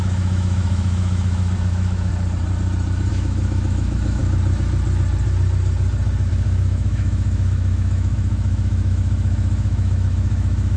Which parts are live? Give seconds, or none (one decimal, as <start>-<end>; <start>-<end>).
2.1-3.1; 4.2-6.3

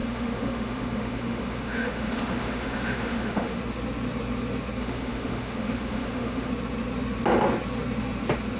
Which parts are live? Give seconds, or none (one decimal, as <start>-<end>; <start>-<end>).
3.6-4.8; 6.5-8.6

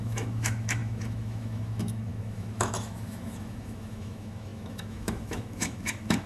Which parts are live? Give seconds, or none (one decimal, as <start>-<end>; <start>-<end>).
none

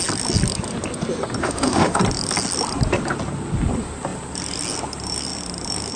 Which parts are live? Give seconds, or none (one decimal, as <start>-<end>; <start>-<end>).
0.0-1.4; 2.0-6.0

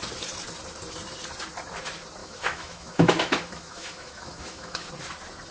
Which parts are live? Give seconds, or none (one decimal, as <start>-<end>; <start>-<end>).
0.0-2.2; 4.9-5.5

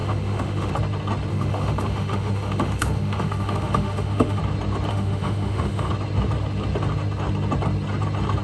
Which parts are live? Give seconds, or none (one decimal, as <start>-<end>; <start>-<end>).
0.7-1.3; 4.4-4.9; 5.9-8.4